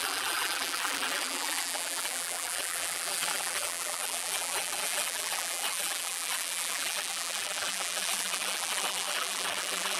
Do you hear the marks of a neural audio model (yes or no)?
yes